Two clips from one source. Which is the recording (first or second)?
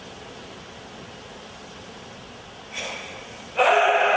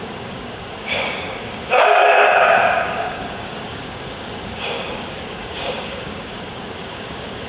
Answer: first